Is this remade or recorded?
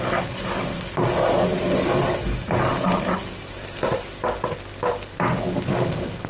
recorded